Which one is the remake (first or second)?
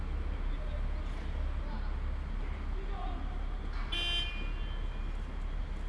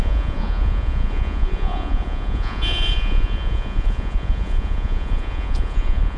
second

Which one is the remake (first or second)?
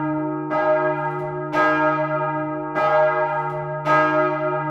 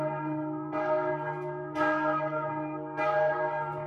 second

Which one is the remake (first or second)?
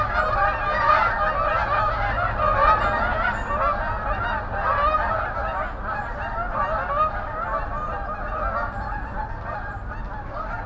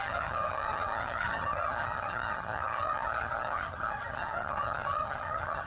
second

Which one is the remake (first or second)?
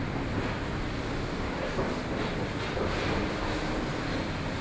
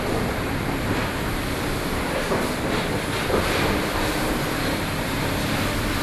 second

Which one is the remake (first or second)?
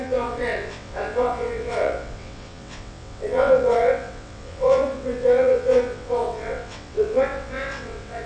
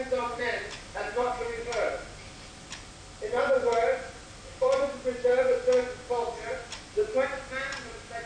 first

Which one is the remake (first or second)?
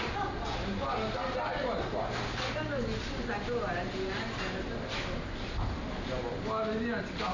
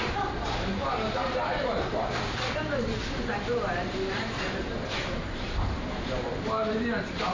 second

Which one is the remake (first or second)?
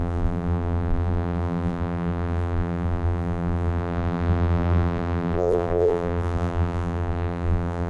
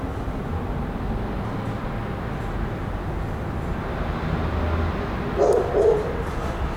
first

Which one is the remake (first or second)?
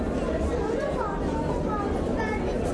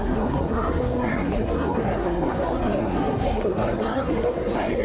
second